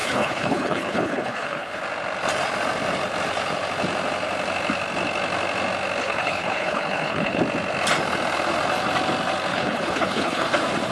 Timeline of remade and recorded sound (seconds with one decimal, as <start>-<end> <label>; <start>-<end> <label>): 0.0-1.8 remade; 1.8-6.0 recorded; 6.0-7.4 remade; 7.4-9.5 recorded; 9.5-10.5 remade; 10.5-10.9 recorded